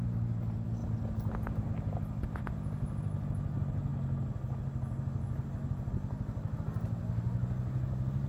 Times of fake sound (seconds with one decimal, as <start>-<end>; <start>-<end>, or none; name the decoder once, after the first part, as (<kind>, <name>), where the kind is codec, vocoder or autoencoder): none

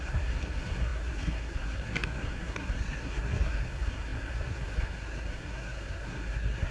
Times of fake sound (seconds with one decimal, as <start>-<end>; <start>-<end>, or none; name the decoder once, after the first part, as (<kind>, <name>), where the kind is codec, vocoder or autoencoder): 0.0-6.7 (codec, SNAC)

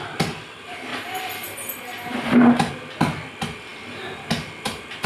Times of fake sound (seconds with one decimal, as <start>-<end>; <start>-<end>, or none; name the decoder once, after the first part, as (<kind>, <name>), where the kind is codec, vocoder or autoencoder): 3.7-5.1 (vocoder, BigVGAN v2)

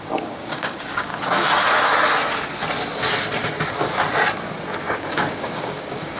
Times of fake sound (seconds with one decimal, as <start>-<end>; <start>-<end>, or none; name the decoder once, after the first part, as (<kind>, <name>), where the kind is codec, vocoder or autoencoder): 0.0-1.1 (codec, DAC); 4.8-6.2

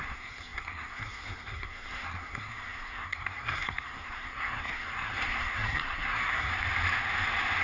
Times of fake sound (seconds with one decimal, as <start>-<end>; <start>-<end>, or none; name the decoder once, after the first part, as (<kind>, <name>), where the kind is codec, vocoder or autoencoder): 0.0-6.5 (codec, SNAC)

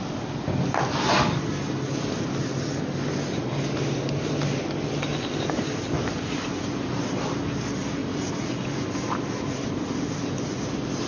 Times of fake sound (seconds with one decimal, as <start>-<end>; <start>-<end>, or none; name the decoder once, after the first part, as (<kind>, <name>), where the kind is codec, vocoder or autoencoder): none

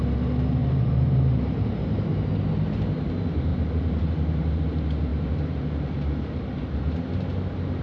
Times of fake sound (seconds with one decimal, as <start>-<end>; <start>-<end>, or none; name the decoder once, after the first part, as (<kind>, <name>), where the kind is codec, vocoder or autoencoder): 0.6-2.3 (vocoder, BigVGAN v2); 3.5-4.6; 5.1-6.5

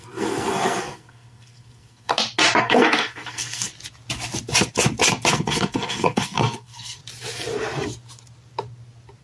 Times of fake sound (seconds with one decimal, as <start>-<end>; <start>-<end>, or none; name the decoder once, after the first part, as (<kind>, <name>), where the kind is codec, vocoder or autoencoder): 0.0-2.1 (codec, SNAC); 2.6-3.7; 5.3-7.0